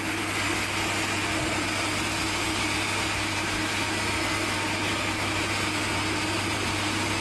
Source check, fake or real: real